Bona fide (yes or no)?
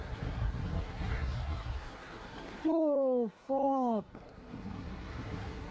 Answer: no